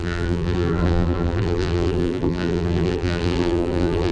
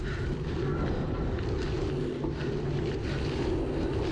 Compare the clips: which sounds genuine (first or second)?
second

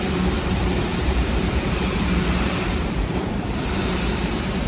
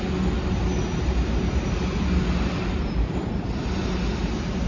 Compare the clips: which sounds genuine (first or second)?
second